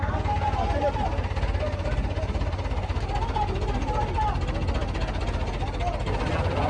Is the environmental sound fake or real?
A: real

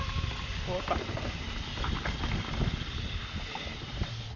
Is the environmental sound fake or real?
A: real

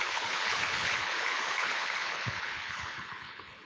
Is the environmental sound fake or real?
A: fake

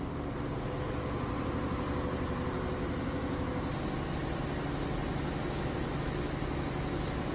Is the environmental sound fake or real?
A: real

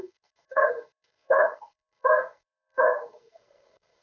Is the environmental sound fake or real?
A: fake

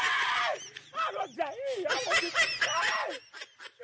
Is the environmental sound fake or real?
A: real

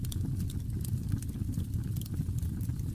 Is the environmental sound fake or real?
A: real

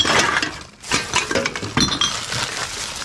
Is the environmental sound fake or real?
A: real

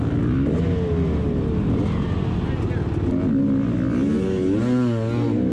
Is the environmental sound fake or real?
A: real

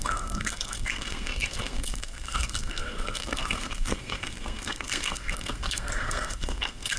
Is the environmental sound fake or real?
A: fake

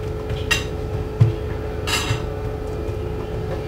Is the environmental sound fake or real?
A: real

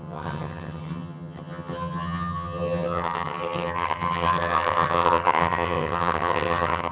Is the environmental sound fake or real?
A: fake